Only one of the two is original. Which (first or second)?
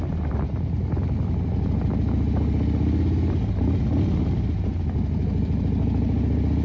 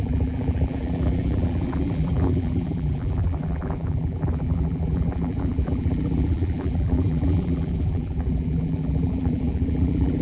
first